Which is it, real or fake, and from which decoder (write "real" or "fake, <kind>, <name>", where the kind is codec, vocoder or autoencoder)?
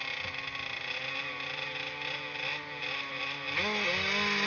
real